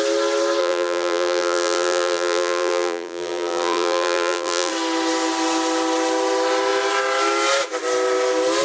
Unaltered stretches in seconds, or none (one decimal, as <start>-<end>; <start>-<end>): 0.0-0.6; 4.7-8.6